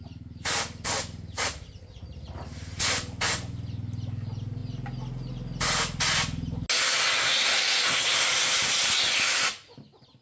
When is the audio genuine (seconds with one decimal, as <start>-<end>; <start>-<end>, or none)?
0.0-10.2